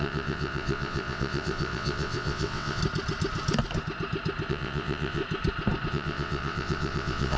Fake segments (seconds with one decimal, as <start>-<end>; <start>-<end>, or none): 0.0-2.8; 4.5-5.2; 5.9-7.4